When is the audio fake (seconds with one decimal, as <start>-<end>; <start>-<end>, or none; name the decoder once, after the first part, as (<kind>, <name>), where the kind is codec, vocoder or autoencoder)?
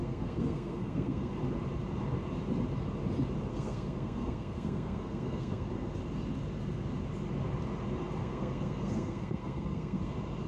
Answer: 0.0-1.3 (codec, SNAC); 3.5-5.7; 8.2-10.1